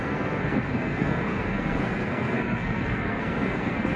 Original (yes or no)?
no